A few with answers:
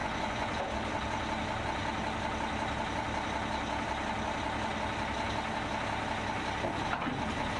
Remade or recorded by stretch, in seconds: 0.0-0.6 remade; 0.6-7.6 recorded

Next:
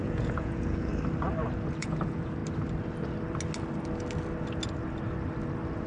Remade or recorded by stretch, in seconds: 0.0-0.9 remade; 0.9-1.8 recorded; 1.8-2.4 remade; 2.4-5.9 recorded

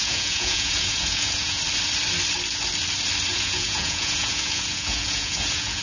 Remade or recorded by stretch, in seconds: 0.0-1.6 remade; 1.6-3.3 recorded; 3.3-5.8 remade

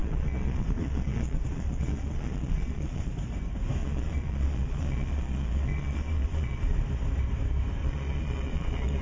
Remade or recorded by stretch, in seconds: 0.0-3.1 remade; 3.1-3.8 recorded; 3.8-6.8 remade; 6.8-7.8 recorded; 7.8-9.0 remade

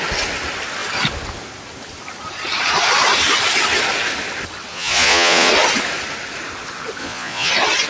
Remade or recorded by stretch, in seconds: 0.0-4.7 recorded; 4.7-5.5 remade; 5.5-7.0 recorded; 7.0-7.5 remade; 7.5-7.9 recorded

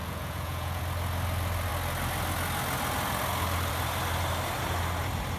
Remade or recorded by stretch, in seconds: 0.0-0.8 remade; 0.8-5.4 recorded

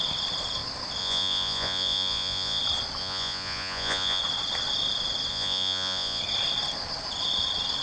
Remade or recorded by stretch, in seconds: 0.0-1.0 recorded; 1.0-2.6 remade; 2.6-3.0 recorded; 3.0-4.2 remade; 4.2-5.3 recorded; 5.3-6.2 remade; 6.2-7.8 recorded

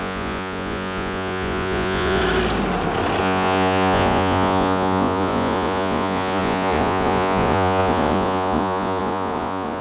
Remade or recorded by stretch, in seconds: 0.0-2.2 remade; 2.2-3.2 recorded; 3.2-9.8 remade